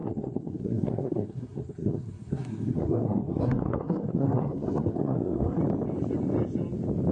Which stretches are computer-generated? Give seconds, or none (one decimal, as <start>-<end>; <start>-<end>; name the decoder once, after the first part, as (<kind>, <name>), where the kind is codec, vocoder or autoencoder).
0.0-5.6 (codec, SNAC)